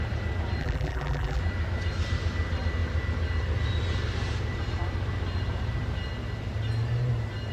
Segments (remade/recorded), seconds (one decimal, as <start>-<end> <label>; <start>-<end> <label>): 0.0-0.6 recorded; 0.6-1.4 remade; 1.4-7.5 recorded